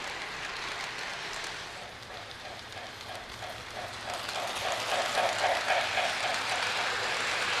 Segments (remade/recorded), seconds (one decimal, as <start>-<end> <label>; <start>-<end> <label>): 0.0-1.1 recorded; 1.1-2.7 remade; 2.7-6.3 recorded; 6.3-7.6 remade